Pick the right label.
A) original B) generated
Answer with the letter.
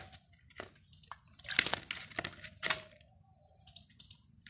A